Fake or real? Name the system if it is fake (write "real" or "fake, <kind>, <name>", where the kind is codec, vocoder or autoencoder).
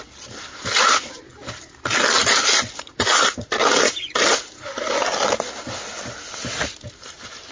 real